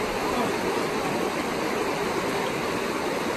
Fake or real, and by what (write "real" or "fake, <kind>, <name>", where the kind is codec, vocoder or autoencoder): real